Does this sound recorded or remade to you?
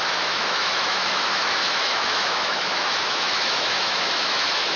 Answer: remade